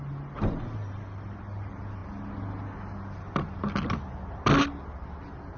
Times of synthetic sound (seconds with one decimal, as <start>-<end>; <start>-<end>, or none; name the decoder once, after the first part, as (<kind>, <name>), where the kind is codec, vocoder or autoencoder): none